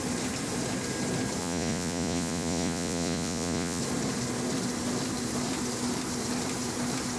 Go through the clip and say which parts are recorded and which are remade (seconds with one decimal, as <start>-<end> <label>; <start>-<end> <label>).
0.0-1.4 recorded; 1.4-3.8 remade; 3.8-7.2 recorded